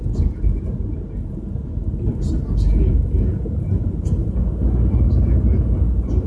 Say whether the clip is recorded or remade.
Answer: recorded